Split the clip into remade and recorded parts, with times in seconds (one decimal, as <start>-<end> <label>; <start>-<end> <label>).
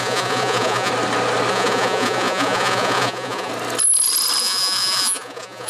0.0-0.9 remade; 0.9-1.5 recorded; 1.5-3.5 remade; 3.5-4.4 recorded; 4.4-5.7 remade